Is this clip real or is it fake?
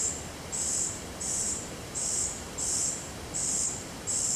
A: fake